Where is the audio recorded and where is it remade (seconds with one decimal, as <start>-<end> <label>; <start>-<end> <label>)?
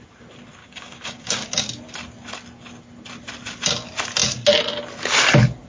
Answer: 0.0-0.6 recorded; 0.6-1.5 remade; 1.5-5.7 recorded